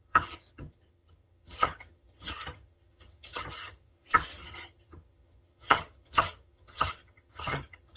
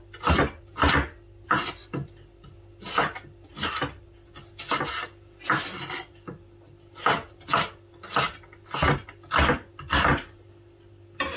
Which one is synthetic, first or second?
first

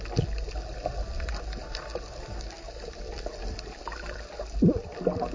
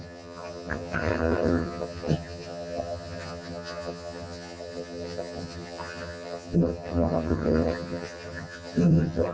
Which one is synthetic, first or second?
second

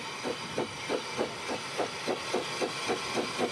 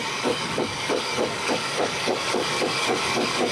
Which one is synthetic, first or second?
second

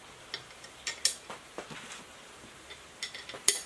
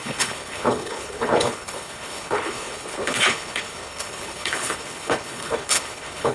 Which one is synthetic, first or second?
second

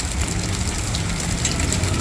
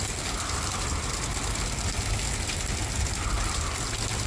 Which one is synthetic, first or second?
first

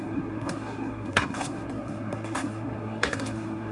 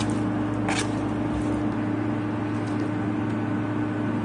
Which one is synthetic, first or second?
first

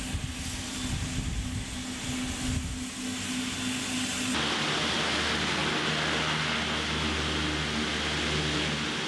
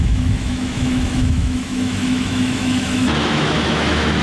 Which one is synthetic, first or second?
second